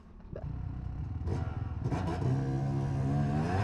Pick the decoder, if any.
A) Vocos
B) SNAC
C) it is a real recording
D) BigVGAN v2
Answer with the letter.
C